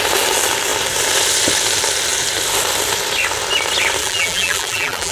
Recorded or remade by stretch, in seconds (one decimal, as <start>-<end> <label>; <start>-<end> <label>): 0.0-4.0 recorded; 4.0-5.1 remade